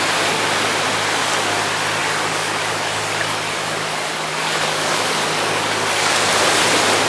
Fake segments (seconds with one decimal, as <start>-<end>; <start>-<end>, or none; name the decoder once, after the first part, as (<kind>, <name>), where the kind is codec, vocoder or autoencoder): 2.0-6.3 (codec, DAC)